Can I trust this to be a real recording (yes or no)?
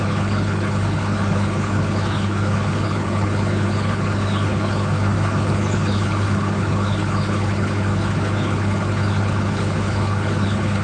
no